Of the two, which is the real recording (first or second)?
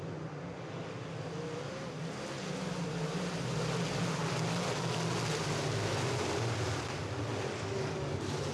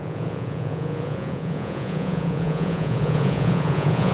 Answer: first